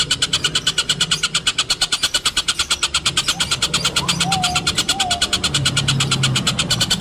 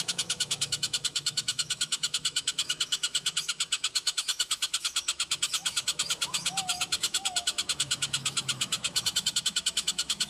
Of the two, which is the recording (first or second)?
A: first